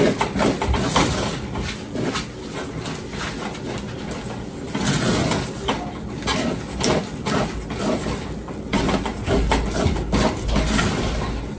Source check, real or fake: real